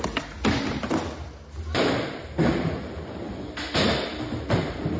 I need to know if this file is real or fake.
real